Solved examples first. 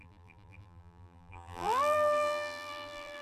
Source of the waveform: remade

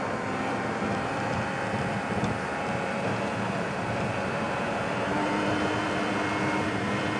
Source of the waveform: remade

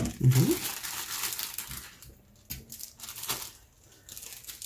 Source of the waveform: recorded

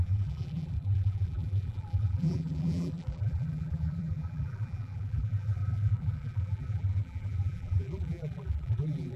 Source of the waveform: remade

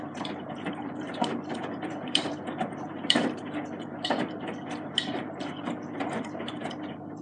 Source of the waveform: remade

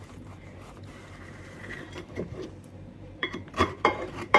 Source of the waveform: remade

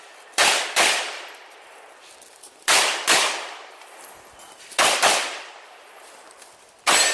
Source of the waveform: remade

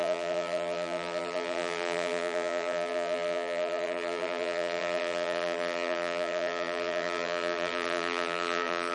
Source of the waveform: remade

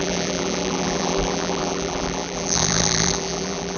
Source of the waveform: remade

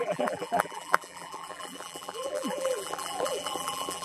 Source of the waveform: remade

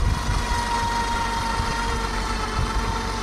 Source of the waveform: recorded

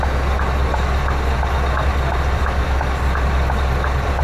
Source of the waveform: recorded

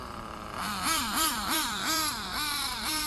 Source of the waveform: remade